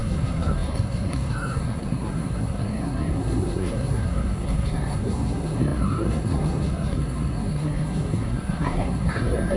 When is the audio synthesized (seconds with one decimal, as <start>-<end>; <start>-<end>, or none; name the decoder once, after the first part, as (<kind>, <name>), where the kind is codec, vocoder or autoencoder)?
0.0-9.6 (codec, SNAC)